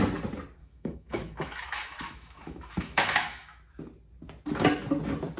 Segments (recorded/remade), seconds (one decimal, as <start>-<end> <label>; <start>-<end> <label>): 0.0-0.6 recorded; 0.6-3.8 remade; 3.8-5.4 recorded

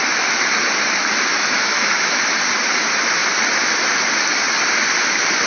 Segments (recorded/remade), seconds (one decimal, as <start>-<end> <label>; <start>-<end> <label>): 0.0-1.3 recorded; 1.3-2.2 remade; 2.2-5.5 recorded

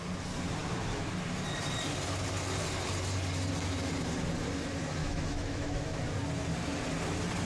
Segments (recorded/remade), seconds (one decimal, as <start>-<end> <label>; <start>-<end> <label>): 0.0-5.0 recorded; 5.0-6.0 remade; 6.0-7.4 recorded